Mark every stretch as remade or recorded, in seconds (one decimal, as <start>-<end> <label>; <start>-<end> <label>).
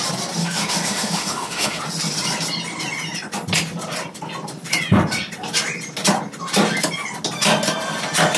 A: 0.0-0.4 recorded; 0.4-1.8 remade; 1.8-8.4 recorded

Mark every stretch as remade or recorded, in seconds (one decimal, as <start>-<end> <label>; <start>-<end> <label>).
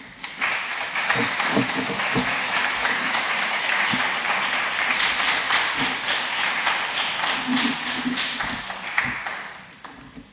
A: 0.0-0.5 recorded; 0.5-3.8 remade; 3.8-10.3 recorded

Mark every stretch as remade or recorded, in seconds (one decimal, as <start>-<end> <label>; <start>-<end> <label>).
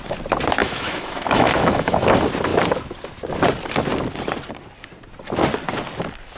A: 0.0-0.6 recorded; 0.6-2.1 remade; 2.1-6.4 recorded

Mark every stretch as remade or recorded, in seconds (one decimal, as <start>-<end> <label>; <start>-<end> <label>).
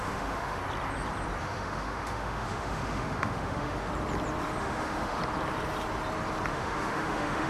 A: 0.0-0.6 remade; 0.6-1.4 recorded; 1.4-3.9 remade; 3.9-4.6 recorded; 4.6-5.2 remade; 5.2-6.5 recorded; 6.5-7.5 remade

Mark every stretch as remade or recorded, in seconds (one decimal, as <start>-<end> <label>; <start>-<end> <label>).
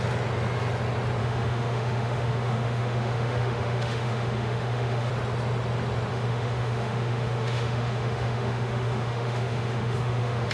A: 0.0-1.2 recorded; 1.2-5.1 remade; 5.1-6.1 recorded; 6.1-10.5 remade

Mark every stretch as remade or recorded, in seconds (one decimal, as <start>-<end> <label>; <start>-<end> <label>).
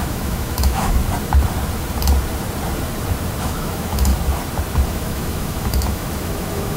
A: 0.0-1.0 remade; 1.0-3.4 recorded; 3.4-4.1 remade; 4.1-4.9 recorded; 4.9-6.8 remade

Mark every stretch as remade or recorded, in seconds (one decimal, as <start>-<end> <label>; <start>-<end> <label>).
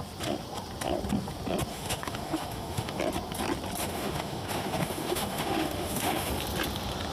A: 0.0-1.7 recorded; 1.7-3.0 remade; 3.0-3.8 recorded; 3.8-6.3 remade; 6.3-7.1 recorded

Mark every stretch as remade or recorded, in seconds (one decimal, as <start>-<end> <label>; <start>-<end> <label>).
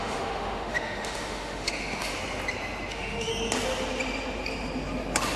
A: 0.0-2.2 remade; 2.2-2.9 recorded; 2.9-3.3 remade; 3.3-5.4 recorded